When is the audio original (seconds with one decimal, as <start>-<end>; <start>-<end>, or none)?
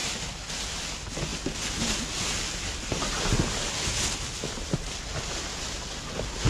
0.0-6.5